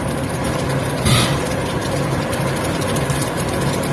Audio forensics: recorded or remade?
recorded